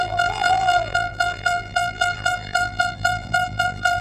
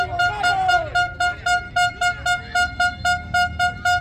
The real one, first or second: second